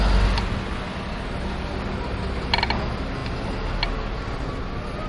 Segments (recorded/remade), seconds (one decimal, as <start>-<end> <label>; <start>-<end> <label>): 0.0-5.1 recorded